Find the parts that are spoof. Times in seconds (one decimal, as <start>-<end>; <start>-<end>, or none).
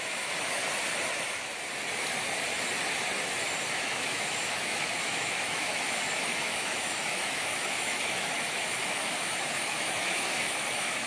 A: 0.0-0.6; 3.7-11.1